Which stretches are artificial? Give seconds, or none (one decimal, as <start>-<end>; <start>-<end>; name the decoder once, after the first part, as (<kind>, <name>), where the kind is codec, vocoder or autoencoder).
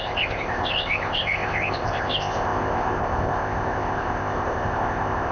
0.0-5.3 (codec, ZipCodec)